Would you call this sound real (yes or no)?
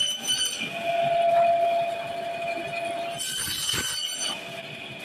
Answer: yes